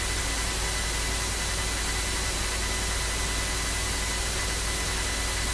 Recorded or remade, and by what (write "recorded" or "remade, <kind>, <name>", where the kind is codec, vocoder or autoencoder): recorded